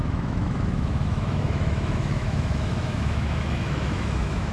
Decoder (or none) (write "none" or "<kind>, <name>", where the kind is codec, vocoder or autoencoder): autoencoder, DAC-VAE